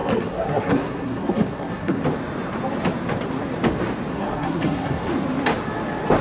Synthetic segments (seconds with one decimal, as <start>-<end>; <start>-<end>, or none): 0.0-2.0; 4.1-5.1